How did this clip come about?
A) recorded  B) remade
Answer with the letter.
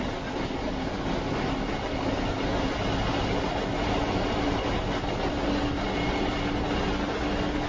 A